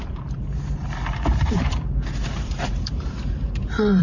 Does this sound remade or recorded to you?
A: remade